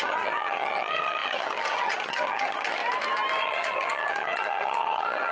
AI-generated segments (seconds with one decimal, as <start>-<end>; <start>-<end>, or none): 0.0-2.8; 3.4-5.3